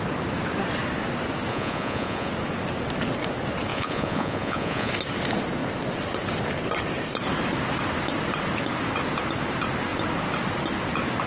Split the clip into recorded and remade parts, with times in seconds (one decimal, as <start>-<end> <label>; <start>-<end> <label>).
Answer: 0.0-1.5 recorded; 1.5-2.3 remade; 2.3-3.7 recorded; 3.7-4.9 remade; 4.9-11.3 recorded